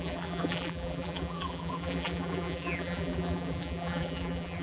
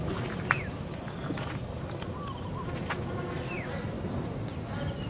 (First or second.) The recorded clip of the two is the second